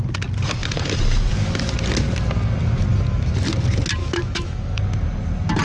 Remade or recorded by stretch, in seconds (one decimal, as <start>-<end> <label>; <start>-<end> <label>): 0.0-4.0 recorded; 4.0-4.8 remade; 4.8-5.6 recorded

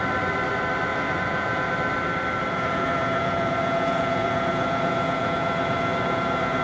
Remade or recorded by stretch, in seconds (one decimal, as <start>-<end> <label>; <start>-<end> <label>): 0.0-0.9 recorded; 0.9-1.7 remade; 1.7-2.4 recorded; 2.4-6.6 remade

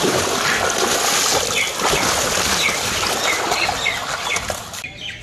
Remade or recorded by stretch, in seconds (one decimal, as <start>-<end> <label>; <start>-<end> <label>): 0.0-5.2 recorded

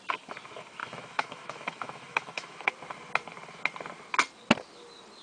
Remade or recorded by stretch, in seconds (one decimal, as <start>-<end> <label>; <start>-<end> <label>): 0.0-0.8 recorded; 0.8-2.7 remade; 2.7-5.2 recorded